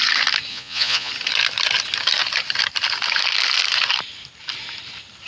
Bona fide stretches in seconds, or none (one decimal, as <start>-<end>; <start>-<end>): 0.0-0.5; 1.1-5.3